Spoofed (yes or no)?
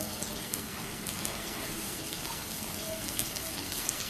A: yes